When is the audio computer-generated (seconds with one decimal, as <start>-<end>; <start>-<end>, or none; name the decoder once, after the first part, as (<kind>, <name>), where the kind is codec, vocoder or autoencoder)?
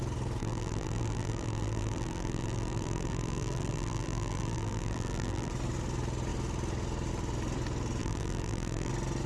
0.4-5.5 (vocoder, BigVGAN v2); 8.0-8.9